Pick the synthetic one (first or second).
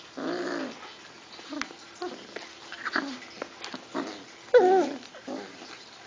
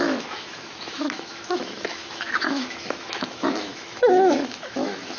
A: second